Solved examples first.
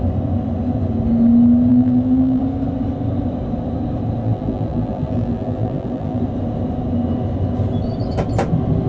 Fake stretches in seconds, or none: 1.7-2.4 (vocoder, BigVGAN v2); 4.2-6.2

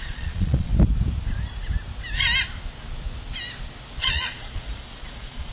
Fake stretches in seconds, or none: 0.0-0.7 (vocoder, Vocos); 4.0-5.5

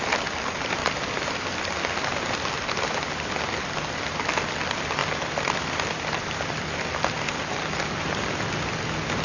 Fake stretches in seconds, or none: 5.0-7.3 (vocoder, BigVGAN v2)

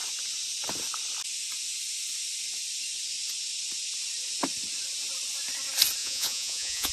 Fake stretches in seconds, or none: 6.0-6.9 (vocoder, Vocos)

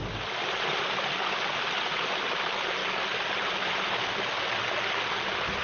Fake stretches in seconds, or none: none

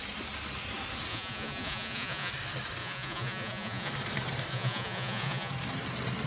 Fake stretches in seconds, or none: 1.1-2.3 (vocoder, Vocos); 2.8-3.9; 4.5-5.5

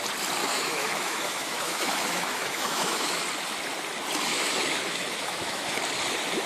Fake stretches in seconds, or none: 0.4-3.2 (autoencoder, DAC-VAE); 4.3-5.8